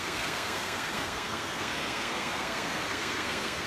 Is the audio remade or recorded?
remade